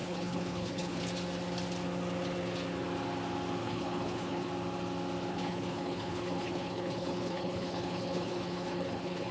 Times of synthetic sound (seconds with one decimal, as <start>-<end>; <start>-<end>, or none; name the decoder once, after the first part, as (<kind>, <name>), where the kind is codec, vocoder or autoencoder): 0.0-1.0 (codec, HILCodec); 3.6-4.5; 5.3-9.3

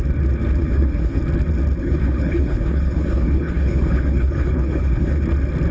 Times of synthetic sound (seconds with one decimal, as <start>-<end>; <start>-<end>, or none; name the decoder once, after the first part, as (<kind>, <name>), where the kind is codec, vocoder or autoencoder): 0.6-1.2 (codec, HILCodec); 1.8-5.2

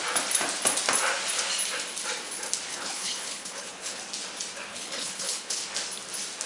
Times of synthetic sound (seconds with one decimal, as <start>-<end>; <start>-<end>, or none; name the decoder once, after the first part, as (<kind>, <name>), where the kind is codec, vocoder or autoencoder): 2.7-4.0 (codec, HILCodec); 4.7-5.6

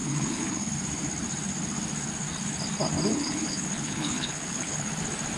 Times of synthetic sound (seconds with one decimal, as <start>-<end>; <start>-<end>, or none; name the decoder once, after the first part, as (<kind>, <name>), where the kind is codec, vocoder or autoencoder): 0.0-0.7 (codec, HILCodec); 3.1-4.9

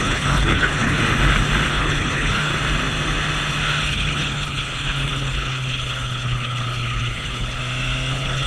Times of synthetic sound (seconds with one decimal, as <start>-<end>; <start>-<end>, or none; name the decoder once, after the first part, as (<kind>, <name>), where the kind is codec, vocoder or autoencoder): 0.0-1.0 (codec, HILCodec); 1.7-2.5; 3.8-7.6; 8.1-8.5

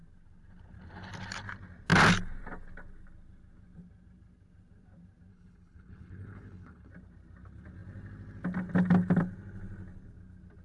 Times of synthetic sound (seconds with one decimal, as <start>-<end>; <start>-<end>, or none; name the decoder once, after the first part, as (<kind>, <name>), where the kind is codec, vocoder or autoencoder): 5.3-6.9 (codec, HILCodec)